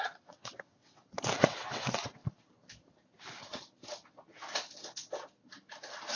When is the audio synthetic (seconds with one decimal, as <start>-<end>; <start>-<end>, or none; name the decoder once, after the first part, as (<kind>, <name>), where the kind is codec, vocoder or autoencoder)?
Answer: 0.0-2.2 (vocoder, WaveNeXt)